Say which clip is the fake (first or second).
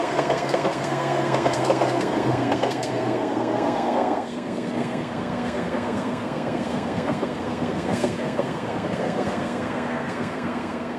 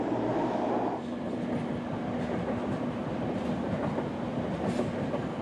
first